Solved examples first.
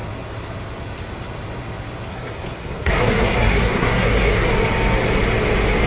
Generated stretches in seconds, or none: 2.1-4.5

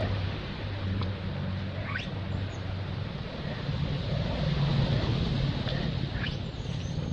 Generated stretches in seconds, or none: 0.0-1.1

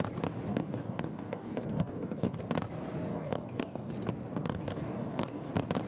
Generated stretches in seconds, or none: 0.5-2.4; 3.1-3.9; 4.4-5.5

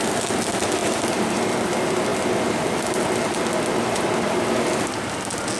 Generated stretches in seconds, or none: 0.8-1.5

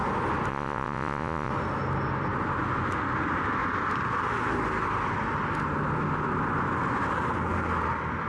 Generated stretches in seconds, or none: 0.5-1.5

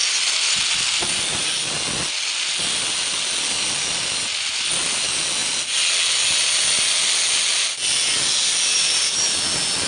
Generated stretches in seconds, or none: none

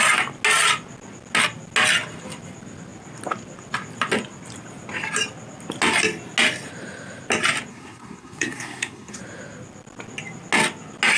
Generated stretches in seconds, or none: 7.7-9.2

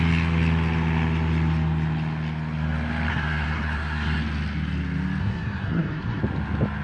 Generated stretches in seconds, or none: 3.1-4.2; 5.2-6.2